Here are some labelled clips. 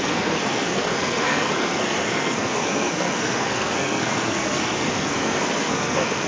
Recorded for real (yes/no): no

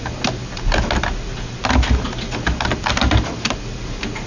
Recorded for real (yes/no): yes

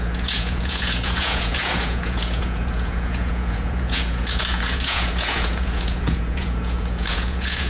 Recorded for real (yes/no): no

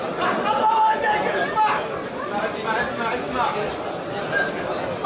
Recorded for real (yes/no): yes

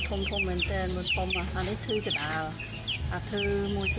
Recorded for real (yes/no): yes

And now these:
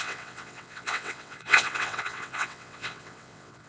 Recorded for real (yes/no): no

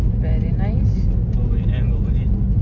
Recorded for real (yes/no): yes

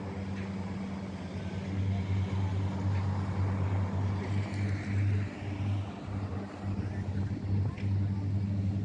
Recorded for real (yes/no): yes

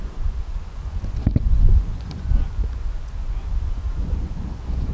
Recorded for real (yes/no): no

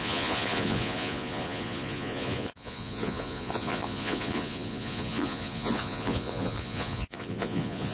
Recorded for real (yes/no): no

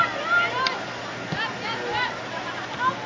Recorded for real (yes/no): yes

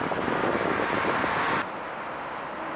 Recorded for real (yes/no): yes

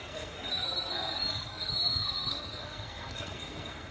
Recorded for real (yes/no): no